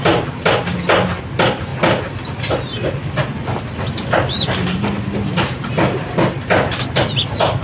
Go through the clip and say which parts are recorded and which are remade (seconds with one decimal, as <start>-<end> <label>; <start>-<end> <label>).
0.0-7.6 recorded